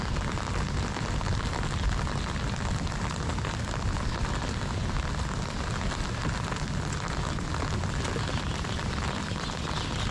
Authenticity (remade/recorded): recorded